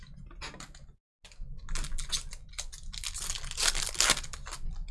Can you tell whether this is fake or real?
real